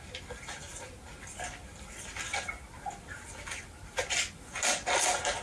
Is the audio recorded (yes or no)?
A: yes